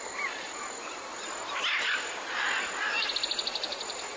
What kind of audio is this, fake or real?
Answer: real